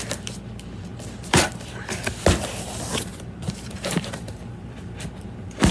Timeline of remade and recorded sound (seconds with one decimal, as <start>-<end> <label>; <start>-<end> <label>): 0.0-3.1 recorded; 3.1-4.4 remade; 4.4-5.7 recorded